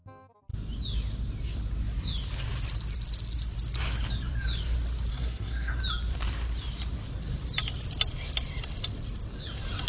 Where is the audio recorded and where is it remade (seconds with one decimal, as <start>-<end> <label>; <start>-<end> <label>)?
0.0-5.1 recorded; 5.1-5.8 remade; 5.8-9.9 recorded